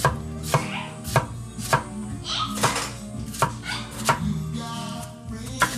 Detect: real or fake real